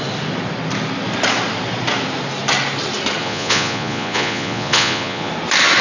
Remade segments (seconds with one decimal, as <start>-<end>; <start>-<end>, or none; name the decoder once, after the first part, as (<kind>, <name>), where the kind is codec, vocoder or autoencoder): 3.2-5.3 (vocoder, Vocos)